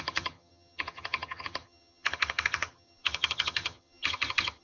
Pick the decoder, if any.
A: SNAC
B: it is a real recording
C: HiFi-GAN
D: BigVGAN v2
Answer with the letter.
C